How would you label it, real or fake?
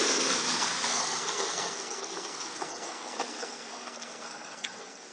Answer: fake